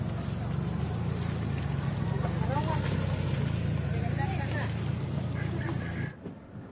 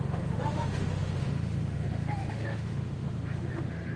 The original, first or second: first